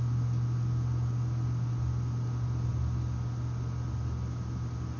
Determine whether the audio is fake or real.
real